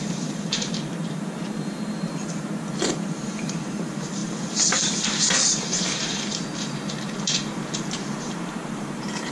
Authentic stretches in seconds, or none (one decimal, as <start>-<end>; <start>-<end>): 4.2-5.5